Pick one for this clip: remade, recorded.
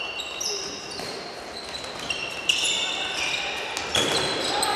recorded